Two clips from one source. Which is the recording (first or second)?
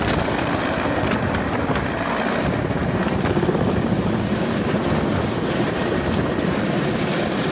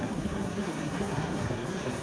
first